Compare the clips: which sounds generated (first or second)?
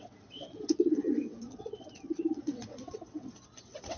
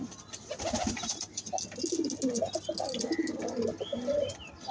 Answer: first